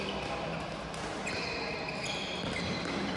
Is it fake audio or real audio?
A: real